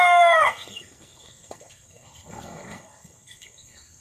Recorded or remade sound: remade